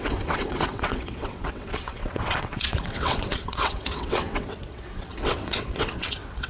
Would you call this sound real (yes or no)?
no